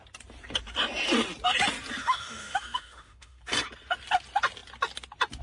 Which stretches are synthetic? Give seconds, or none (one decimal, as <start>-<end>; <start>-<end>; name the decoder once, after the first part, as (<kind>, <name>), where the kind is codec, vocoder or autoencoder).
2.0-3.4 (autoencoder, DAC-VAE)